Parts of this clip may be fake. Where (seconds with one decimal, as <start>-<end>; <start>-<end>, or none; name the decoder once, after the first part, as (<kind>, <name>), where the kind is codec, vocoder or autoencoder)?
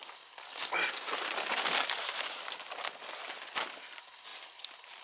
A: none